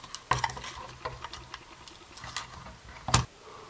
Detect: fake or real real